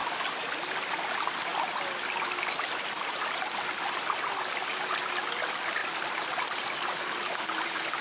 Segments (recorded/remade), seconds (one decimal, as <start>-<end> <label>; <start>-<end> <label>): 0.0-8.0 recorded